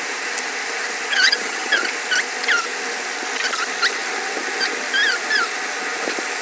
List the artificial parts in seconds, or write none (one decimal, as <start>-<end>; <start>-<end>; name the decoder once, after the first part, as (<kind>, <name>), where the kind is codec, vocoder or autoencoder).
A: 1.1-1.8 (vocoder, HiFi-GAN)